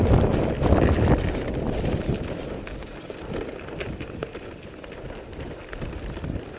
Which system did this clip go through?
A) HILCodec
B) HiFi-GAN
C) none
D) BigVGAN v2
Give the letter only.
D